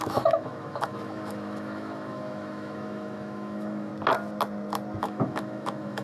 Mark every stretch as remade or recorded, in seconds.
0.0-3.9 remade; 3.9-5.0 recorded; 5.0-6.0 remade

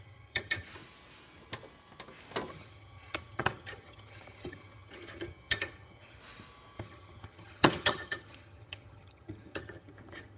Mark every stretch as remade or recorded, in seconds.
0.0-0.7 remade; 0.7-2.5 recorded; 2.5-6.2 remade; 6.2-6.8 recorded; 6.8-10.4 remade

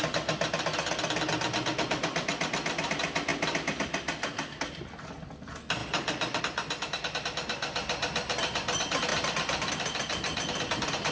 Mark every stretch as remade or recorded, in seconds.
0.0-5.8 recorded; 5.8-6.4 remade; 6.4-9.1 recorded; 9.1-9.7 remade; 9.7-11.1 recorded

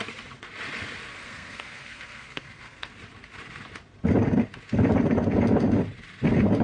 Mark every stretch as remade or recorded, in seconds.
0.0-1.1 recorded; 1.1-2.9 remade; 2.9-6.6 recorded

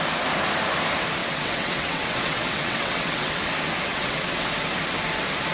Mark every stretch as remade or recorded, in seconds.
0.0-1.2 recorded; 1.2-3.3 remade; 3.3-3.9 recorded; 3.9-4.5 remade; 4.5-5.5 recorded

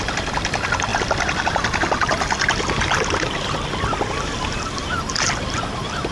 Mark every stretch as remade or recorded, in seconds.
0.0-6.1 recorded

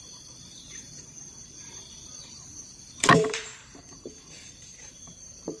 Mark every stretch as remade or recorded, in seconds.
0.0-5.6 remade